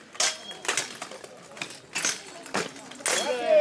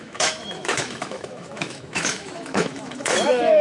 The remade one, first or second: second